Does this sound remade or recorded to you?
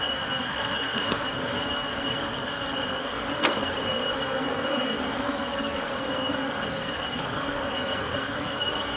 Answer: remade